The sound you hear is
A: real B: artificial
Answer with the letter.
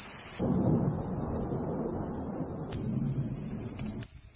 A